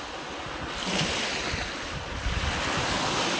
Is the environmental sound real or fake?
real